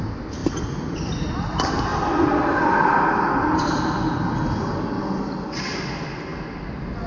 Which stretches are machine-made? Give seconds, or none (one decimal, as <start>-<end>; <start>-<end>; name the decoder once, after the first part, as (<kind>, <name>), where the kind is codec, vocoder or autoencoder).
none